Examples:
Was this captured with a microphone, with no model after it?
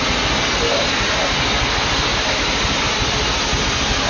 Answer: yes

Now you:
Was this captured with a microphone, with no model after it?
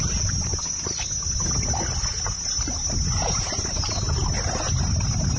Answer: yes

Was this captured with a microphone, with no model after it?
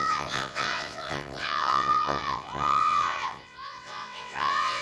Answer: no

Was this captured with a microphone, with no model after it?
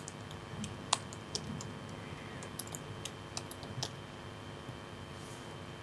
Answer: yes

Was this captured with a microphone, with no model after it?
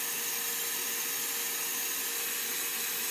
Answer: yes